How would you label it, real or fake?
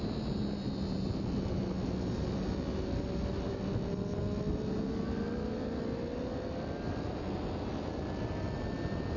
real